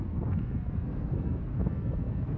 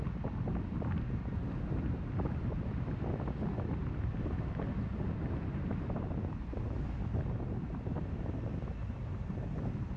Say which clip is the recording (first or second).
second